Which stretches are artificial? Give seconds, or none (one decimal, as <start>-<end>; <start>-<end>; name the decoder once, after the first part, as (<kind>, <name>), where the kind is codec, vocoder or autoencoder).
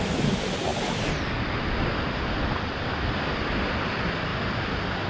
none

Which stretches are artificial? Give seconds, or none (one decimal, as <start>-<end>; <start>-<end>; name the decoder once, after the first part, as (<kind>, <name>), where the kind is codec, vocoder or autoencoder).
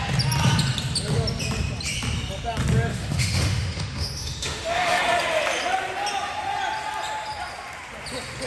2.9-5.0 (autoencoder, DAC-VAE)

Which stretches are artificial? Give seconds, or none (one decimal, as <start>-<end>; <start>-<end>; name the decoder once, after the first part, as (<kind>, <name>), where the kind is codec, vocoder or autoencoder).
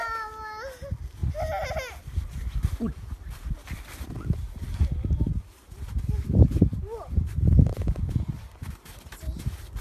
none